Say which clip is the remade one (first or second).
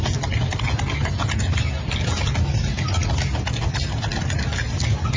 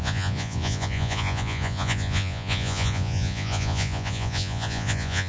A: second